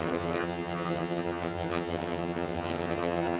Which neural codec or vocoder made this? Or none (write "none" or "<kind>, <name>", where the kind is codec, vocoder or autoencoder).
vocoder, HiFi-GAN